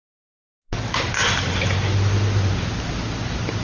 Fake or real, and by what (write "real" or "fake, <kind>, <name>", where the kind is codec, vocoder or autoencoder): real